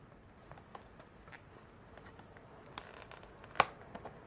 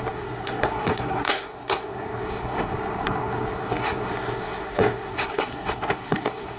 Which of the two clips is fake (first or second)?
second